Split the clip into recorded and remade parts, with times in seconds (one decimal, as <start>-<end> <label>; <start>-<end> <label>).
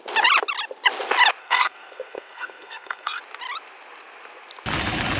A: 0.0-1.4 recorded; 1.4-3.2 remade; 3.2-5.2 recorded